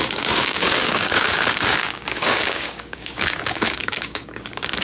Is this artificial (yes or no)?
yes